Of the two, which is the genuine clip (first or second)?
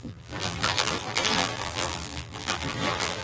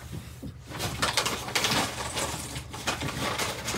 second